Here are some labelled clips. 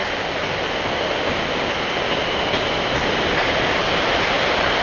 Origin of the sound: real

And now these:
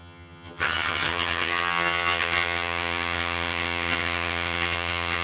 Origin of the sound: fake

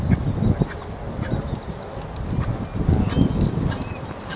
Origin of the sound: real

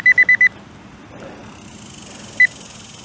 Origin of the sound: real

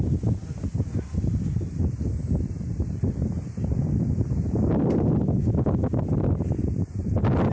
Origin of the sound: real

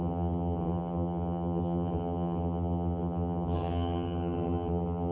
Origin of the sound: fake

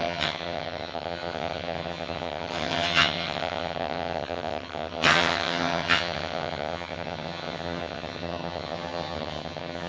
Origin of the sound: fake